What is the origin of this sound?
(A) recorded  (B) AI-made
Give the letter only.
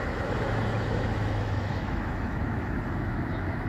B